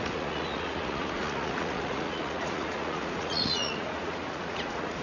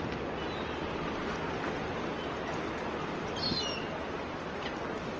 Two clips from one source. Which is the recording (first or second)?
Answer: second